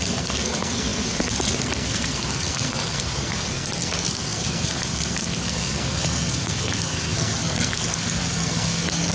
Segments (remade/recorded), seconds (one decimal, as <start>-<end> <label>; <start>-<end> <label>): 0.0-9.1 remade